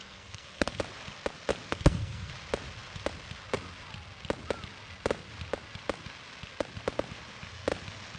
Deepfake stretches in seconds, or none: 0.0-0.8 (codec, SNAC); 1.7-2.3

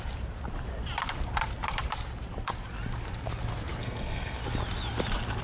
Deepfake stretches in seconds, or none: 3.8-4.4 (codec, SNAC)

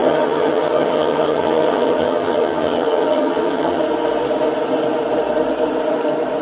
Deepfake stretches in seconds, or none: 0.0-3.8 (vocoder, HiFi-GAN)

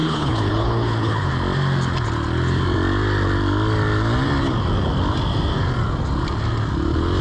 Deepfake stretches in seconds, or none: 0.0-1.3 (codec, HILCodec)